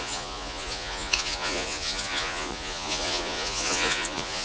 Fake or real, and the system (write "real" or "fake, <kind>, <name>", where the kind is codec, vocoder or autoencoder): fake, vocoder, Vocos